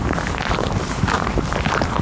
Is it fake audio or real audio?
fake